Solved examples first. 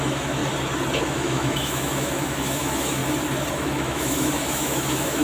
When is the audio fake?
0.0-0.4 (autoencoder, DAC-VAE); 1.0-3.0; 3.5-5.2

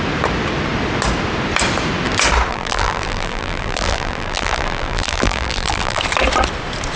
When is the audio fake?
2.5-6.0 (vocoder, BigVGAN v2)

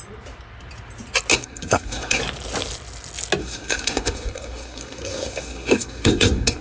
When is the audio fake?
1.3-2.2 (codec, SNAC); 3.4-6.6

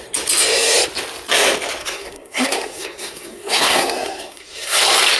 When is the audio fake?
1.8-4.8 (codec, SNAC)

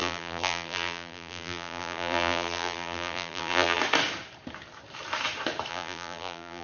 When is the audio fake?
0.0-3.8 (vocoder, BigVGAN v2); 5.7-6.6